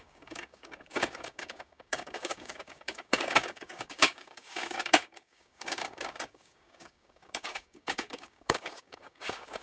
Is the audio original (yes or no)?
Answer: no